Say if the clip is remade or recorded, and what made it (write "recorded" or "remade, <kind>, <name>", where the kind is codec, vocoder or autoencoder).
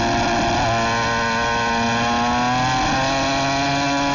recorded